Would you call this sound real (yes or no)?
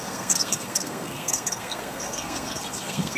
no